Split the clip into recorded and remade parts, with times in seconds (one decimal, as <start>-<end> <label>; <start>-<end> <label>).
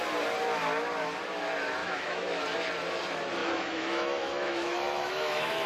0.0-1.8 recorded; 1.8-2.4 remade; 2.4-3.4 recorded; 3.4-5.7 remade